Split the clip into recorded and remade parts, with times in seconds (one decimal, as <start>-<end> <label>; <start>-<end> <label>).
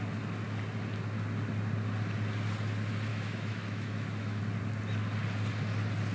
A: 0.0-3.1 recorded; 3.1-4.4 remade; 4.4-6.1 recorded